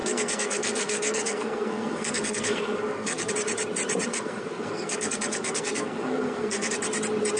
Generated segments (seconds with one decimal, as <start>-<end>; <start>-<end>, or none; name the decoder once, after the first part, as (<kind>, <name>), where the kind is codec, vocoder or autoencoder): 0.0-3.3 (codec, SNAC); 4.1-6.7